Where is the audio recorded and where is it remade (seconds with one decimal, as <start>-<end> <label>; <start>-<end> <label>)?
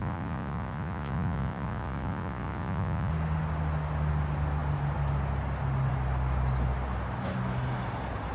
0.0-3.1 remade; 3.1-8.3 recorded